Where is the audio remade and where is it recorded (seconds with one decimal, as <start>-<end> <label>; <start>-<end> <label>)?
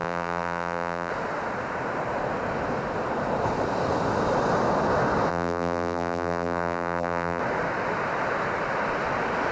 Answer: 0.0-1.1 remade; 1.1-5.3 recorded; 5.3-7.4 remade; 7.4-9.5 recorded